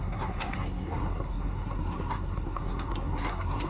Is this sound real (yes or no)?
no